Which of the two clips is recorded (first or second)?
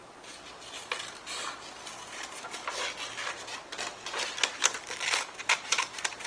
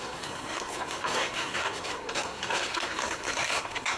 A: first